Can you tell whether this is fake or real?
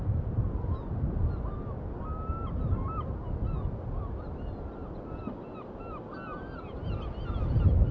real